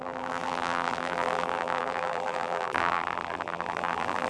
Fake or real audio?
fake